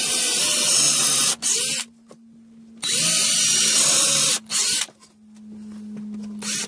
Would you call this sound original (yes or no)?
yes